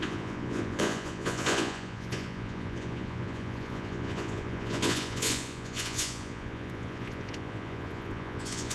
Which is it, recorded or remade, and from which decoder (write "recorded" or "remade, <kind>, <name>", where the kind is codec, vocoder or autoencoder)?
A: remade, vocoder, Vocos